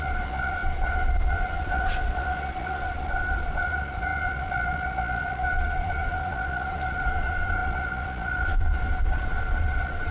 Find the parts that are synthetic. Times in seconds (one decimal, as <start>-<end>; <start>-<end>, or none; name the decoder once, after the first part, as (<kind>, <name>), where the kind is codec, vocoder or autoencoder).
0.0-10.1 (vocoder, Vocos)